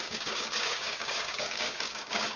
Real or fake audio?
fake